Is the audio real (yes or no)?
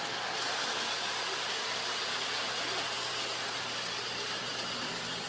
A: yes